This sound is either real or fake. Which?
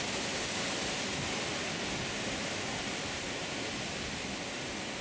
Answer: real